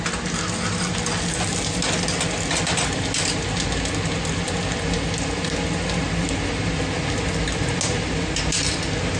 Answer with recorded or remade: recorded